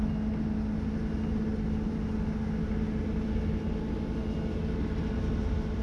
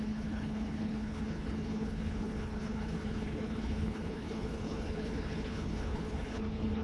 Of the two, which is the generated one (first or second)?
second